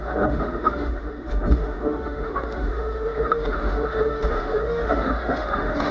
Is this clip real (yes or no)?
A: no